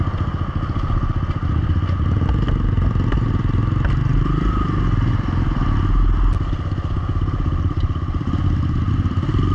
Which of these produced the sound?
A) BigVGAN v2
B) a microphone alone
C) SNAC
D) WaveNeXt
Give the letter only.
B